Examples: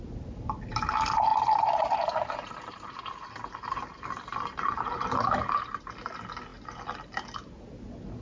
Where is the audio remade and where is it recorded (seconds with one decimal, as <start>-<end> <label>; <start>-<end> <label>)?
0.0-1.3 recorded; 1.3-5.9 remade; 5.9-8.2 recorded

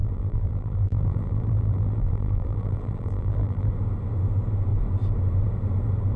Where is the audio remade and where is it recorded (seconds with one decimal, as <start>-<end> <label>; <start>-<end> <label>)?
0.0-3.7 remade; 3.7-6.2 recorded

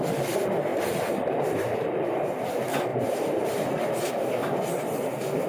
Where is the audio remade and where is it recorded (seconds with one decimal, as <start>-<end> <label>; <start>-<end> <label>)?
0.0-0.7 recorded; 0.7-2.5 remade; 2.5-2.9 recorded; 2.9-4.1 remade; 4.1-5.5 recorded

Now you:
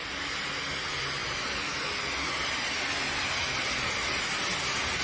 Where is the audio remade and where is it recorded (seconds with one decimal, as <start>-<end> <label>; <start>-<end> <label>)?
0.0-5.0 recorded